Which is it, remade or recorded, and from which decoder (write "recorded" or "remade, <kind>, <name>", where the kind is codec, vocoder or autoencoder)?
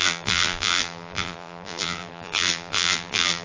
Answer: remade, vocoder, BigVGAN v2